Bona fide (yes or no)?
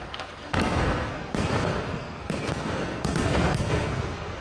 no